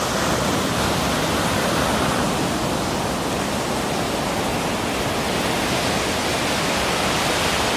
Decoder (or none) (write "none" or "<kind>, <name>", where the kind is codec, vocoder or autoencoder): none